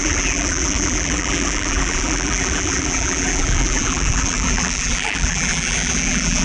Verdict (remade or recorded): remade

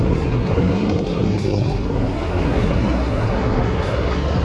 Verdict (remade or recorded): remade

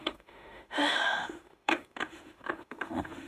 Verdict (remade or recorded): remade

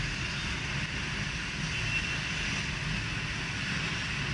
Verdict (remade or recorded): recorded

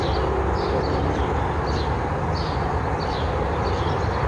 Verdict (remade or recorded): recorded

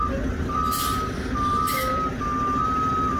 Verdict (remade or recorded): recorded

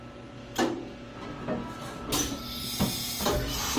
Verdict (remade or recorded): recorded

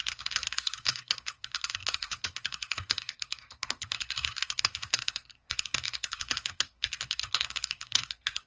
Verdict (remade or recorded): remade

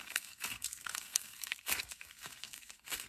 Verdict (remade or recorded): remade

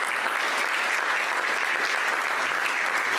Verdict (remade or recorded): recorded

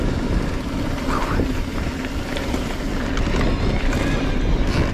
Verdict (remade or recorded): recorded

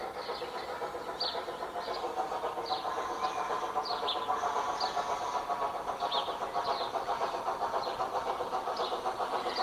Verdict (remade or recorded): recorded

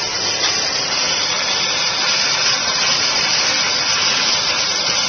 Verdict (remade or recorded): recorded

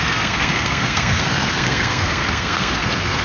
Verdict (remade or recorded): remade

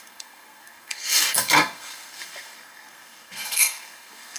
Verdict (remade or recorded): remade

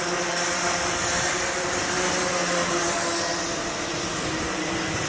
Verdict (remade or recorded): recorded